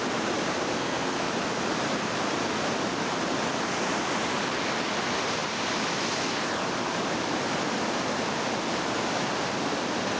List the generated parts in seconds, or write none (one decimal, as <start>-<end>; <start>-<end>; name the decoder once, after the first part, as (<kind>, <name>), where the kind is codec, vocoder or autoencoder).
0.7-1.3 (codec, SNAC)